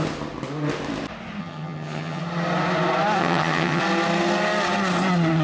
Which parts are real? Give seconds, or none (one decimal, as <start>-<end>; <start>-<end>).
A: 0.0-1.4; 2.2-3.2; 3.8-5.4